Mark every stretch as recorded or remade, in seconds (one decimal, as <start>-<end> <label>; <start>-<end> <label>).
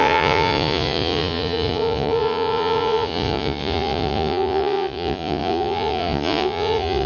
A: 0.0-7.1 remade